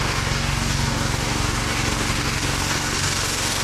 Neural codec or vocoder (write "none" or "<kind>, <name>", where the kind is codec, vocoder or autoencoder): codec, DAC